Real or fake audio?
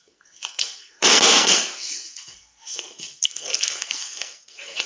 fake